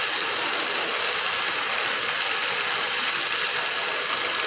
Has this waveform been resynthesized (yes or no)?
no